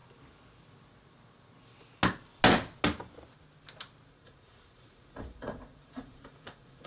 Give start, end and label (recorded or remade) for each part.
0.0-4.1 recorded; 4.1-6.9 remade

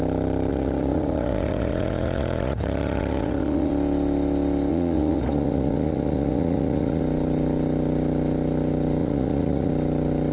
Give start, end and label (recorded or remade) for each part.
0.0-0.5 recorded; 0.5-3.7 remade; 3.7-4.7 recorded; 4.7-7.0 remade; 7.0-9.0 recorded; 9.0-9.7 remade; 9.7-10.3 recorded

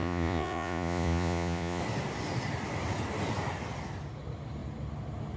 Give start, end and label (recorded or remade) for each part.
0.0-1.8 remade; 1.8-5.4 recorded

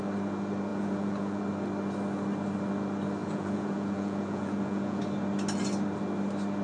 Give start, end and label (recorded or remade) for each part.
0.0-0.7 recorded; 0.7-1.4 remade; 1.4-3.2 recorded; 3.2-5.0 remade; 5.0-6.6 recorded

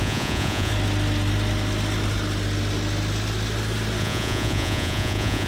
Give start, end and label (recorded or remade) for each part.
0.0-0.7 remade; 0.7-4.0 recorded; 4.0-5.5 remade

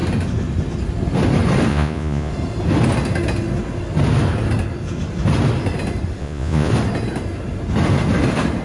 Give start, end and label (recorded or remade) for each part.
0.0-1.7 recorded; 1.7-2.3 remade; 2.3-6.2 recorded; 6.2-6.7 remade; 6.7-8.6 recorded

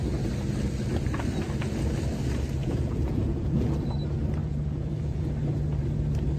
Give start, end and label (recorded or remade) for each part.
0.0-2.6 recorded; 2.6-3.9 remade; 3.9-4.4 recorded; 4.4-5.3 remade; 5.3-6.4 recorded